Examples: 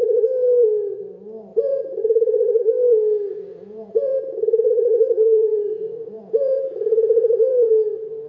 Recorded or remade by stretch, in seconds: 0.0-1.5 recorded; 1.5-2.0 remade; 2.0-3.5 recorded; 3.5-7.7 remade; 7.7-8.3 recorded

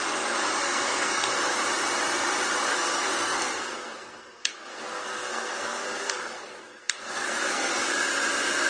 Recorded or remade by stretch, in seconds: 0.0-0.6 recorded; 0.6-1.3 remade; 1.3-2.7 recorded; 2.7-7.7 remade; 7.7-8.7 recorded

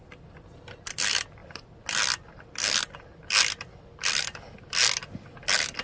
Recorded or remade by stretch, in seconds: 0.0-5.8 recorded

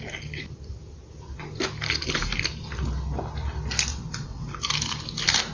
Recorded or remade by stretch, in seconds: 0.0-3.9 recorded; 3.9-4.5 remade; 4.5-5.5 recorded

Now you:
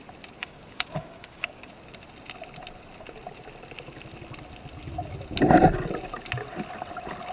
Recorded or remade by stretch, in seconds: 0.0-0.4 recorded; 0.4-1.7 remade; 1.7-7.3 recorded

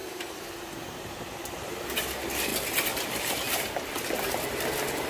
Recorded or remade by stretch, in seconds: 0.0-1.7 remade; 1.7-5.1 recorded

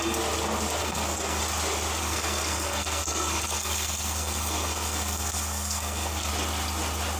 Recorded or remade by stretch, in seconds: 0.0-0.8 recorded; 0.8-1.4 remade; 1.4-2.0 recorded; 2.0-6.3 remade; 6.3-7.2 recorded